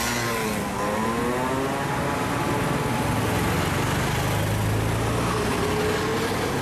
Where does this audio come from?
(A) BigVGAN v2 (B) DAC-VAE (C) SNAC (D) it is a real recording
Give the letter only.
D